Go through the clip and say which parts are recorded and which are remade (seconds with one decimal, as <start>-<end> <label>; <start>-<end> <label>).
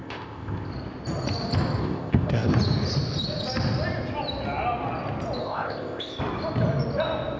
0.0-0.7 remade; 0.7-1.8 recorded; 1.8-2.5 remade; 2.5-5.4 recorded; 5.4-6.2 remade; 6.2-7.4 recorded